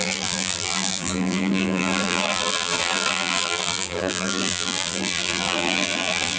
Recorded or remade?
remade